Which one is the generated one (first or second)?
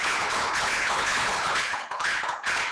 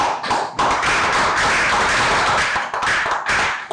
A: first